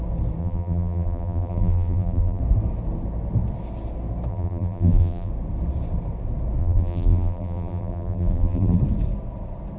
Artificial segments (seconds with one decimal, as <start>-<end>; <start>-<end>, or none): 0.4-2.4; 4.3-5.3; 6.6-8.8